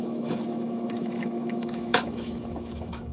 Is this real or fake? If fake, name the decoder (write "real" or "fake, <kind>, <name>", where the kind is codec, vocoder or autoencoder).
fake, autoencoder, DAC-VAE